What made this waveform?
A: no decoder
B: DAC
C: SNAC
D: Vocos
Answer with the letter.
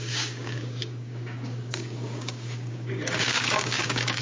B